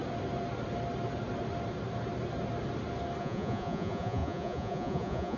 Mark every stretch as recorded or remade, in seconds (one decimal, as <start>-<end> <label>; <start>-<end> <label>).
0.0-3.2 recorded; 3.2-5.4 remade